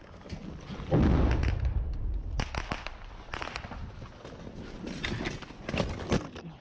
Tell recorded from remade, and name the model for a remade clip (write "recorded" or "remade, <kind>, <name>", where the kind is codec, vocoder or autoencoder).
recorded